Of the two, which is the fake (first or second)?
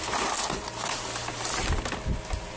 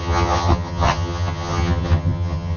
second